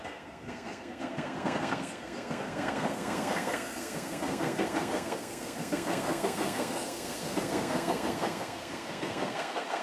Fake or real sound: fake